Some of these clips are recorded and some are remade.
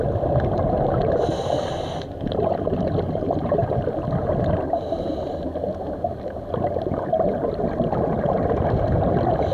recorded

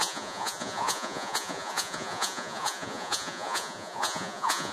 remade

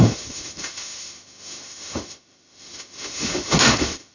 remade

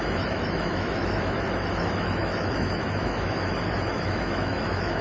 remade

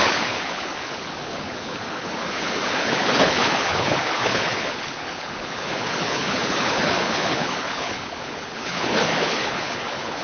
remade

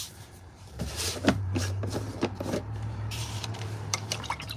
remade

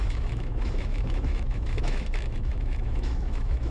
remade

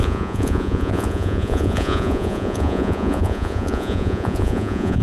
remade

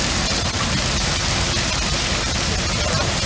recorded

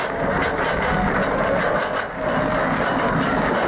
recorded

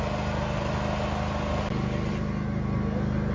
recorded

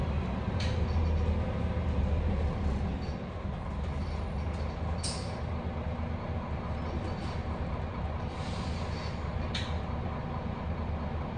recorded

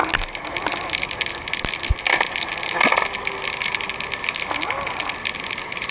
recorded